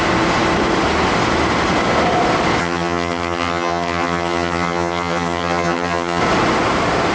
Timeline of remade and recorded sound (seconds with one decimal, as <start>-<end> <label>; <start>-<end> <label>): 0.0-2.6 recorded; 2.6-6.2 remade; 6.2-7.1 recorded